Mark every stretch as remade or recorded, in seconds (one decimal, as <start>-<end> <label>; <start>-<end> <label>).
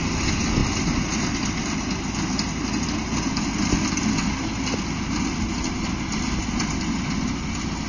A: 0.0-7.9 recorded